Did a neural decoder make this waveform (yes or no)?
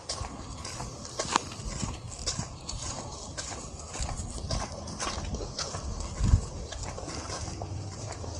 no